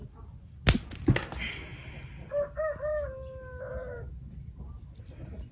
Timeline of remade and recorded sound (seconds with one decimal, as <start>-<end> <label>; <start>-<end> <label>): 0.0-5.5 recorded